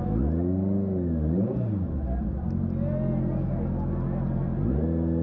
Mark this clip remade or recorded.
recorded